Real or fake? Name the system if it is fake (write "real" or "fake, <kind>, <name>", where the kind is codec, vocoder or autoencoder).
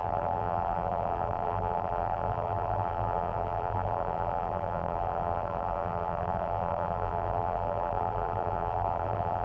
fake, vocoder, BigVGAN v2